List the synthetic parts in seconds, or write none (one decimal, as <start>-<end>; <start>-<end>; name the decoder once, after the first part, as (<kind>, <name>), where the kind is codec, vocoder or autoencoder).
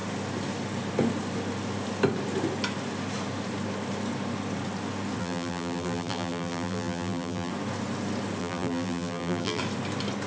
5.2-7.5 (vocoder, BigVGAN v2); 8.4-9.6